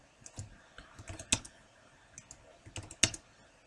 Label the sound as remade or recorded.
recorded